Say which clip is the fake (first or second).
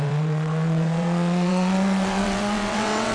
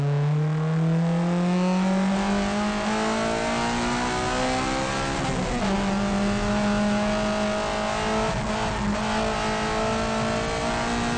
first